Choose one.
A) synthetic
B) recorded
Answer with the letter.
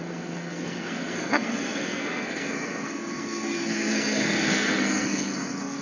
A